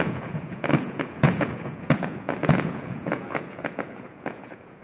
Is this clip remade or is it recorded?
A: remade